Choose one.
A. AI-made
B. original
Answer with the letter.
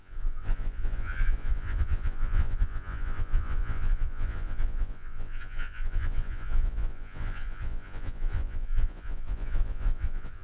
A